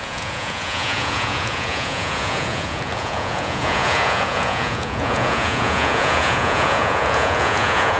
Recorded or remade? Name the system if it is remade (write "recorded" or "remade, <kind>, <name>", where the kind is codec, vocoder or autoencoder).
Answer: remade, vocoder, Vocos